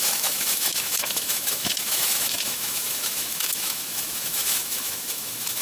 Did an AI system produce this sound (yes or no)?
yes